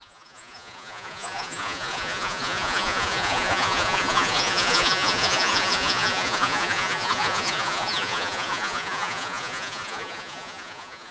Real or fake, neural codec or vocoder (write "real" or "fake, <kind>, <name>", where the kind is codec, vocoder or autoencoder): fake, vocoder, Vocos